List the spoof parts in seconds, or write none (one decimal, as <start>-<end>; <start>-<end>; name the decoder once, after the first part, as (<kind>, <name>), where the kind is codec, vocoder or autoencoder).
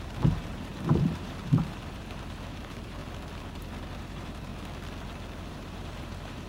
0.0-3.0 (vocoder, BigVGAN v2); 3.5-4.5; 5.5-6.5